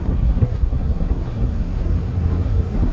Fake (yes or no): yes